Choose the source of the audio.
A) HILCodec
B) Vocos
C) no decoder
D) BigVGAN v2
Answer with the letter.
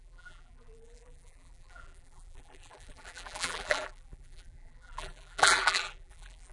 D